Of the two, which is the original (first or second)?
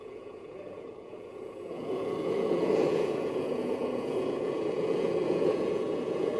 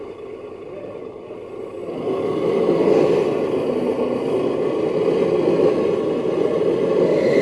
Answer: second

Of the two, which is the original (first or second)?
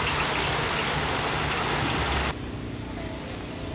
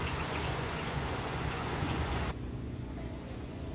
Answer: first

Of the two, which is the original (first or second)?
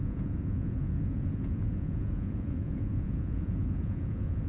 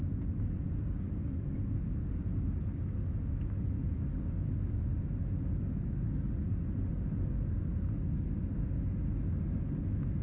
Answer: second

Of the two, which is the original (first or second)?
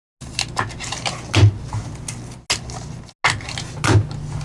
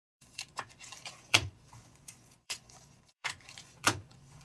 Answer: first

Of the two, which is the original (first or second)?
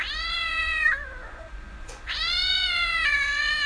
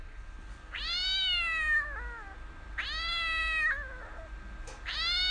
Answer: second